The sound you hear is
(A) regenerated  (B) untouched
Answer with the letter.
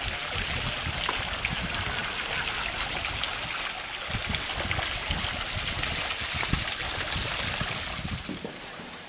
B